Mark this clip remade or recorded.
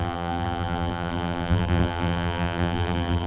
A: remade